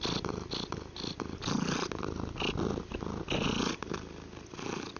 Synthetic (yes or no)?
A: no